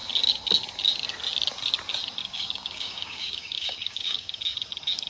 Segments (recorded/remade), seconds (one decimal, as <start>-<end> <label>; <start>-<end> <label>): 0.0-2.2 recorded; 2.2-4.4 remade; 4.4-5.1 recorded